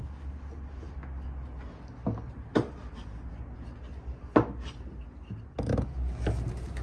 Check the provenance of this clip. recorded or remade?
recorded